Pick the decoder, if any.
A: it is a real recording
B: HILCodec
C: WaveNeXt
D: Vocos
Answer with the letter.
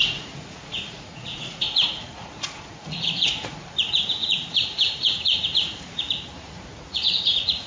D